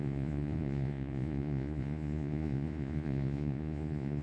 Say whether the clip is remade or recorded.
remade